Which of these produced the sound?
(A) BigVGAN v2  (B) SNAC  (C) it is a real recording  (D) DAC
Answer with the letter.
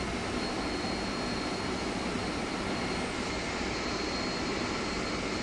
C